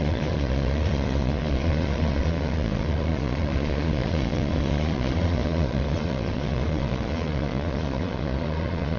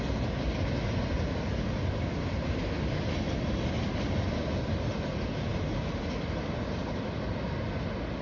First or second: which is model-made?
first